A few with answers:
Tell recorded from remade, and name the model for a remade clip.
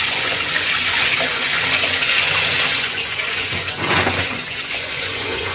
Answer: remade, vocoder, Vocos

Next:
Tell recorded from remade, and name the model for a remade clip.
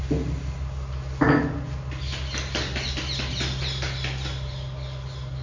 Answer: recorded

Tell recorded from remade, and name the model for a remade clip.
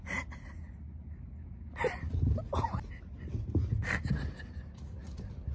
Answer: recorded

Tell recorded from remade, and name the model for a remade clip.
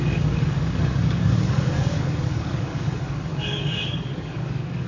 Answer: remade, codec, DAC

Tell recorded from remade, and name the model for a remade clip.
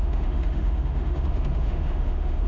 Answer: remade, autoencoder, DAC-VAE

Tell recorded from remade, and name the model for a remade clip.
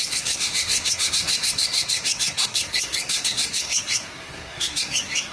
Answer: remade, codec, SNAC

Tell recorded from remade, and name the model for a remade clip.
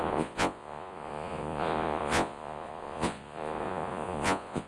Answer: remade, vocoder, Vocos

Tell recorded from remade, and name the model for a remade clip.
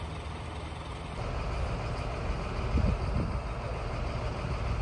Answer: recorded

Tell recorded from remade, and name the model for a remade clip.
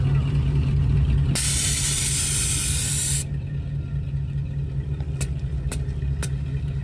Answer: recorded